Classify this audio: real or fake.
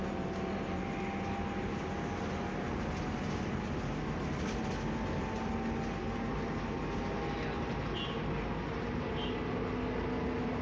real